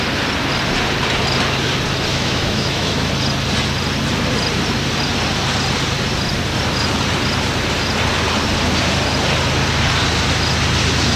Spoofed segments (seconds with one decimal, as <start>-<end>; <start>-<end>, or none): 2.1-3.1